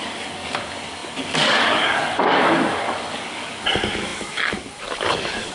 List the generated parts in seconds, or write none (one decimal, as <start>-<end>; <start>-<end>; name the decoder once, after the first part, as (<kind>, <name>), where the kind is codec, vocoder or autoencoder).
0.0-5.5 (codec, DAC)